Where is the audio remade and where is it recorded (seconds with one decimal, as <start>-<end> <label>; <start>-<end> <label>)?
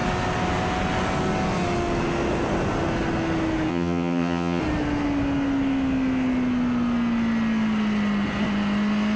0.0-3.7 recorded; 3.7-4.6 remade; 4.6-9.2 recorded